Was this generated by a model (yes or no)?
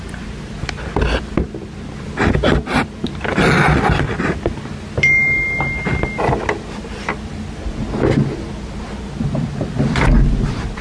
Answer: no